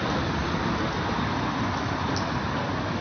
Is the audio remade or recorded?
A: recorded